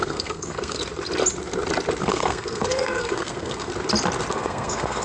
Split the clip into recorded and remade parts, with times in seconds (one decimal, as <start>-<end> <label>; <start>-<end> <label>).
0.0-0.8 remade; 0.8-2.0 recorded; 2.0-3.7 remade; 3.7-4.3 recorded; 4.3-5.0 remade